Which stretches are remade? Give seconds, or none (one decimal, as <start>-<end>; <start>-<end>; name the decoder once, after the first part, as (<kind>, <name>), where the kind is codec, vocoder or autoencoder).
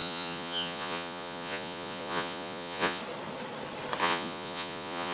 0.0-3.0 (vocoder, Vocos); 4.0-5.1